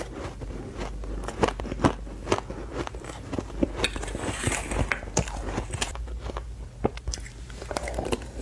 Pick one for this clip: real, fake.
real